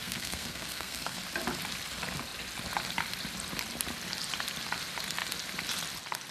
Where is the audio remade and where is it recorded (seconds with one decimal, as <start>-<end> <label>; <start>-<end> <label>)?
0.0-1.2 remade; 1.2-6.3 recorded